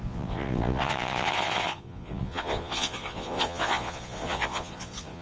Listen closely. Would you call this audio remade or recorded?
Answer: remade